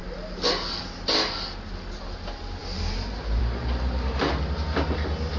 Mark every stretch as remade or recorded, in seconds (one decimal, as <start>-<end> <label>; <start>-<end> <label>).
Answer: 0.0-5.4 recorded